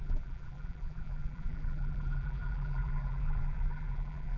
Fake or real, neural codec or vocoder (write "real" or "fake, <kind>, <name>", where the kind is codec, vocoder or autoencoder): fake, vocoder, BigVGAN v2